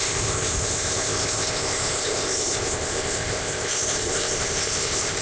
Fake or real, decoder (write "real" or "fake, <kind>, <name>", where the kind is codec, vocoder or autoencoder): fake, codec, ZipCodec